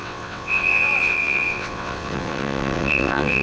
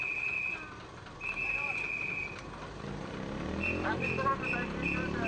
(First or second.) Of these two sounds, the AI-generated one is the first